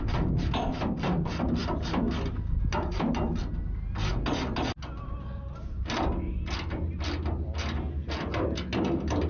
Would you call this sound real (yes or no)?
yes